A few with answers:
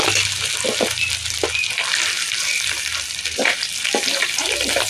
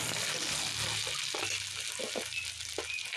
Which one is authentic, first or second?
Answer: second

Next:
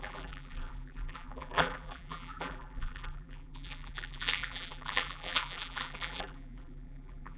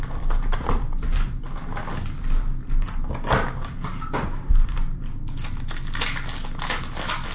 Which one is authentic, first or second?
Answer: second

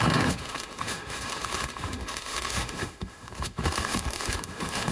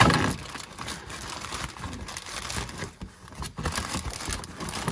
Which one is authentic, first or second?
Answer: second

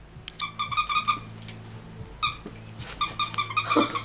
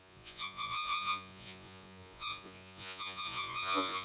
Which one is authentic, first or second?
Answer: first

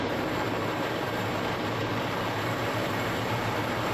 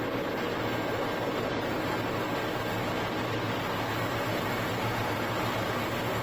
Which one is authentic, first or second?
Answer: second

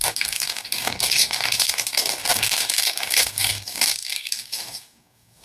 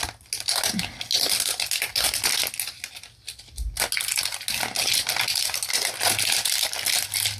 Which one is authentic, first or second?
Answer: second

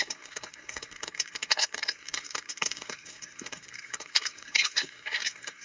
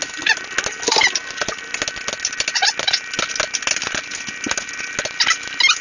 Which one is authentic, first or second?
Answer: second